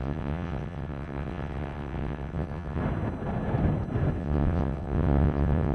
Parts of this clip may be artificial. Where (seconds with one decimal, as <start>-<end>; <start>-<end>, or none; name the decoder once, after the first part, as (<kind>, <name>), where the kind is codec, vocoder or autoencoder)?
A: 0.0-2.8 (vocoder, WaveNeXt); 4.2-5.7